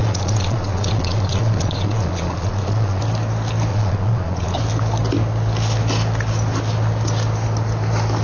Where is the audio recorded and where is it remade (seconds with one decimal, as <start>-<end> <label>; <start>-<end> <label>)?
0.0-3.0 remade; 3.0-3.7 recorded; 3.7-4.6 remade; 4.6-8.2 recorded